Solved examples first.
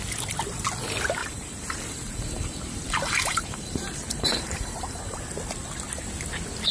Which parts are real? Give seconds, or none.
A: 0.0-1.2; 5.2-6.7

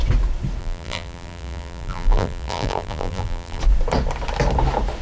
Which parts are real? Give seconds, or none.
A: 0.0-0.6; 3.6-5.0

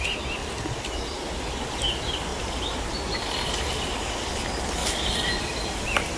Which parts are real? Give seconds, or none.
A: 0.0-0.4; 1.3-2.3; 4.3-4.8

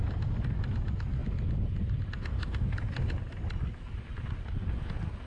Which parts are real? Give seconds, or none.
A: 0.0-5.3

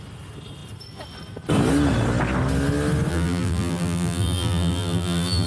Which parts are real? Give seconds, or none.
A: 0.0-3.1

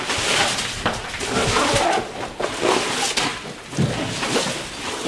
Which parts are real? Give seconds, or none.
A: 0.0-5.1

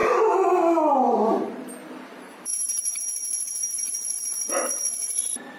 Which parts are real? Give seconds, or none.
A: 0.0-1.3

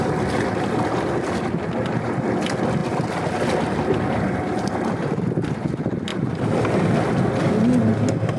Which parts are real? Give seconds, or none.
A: 0.0-8.4